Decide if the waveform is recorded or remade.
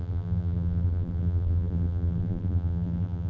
remade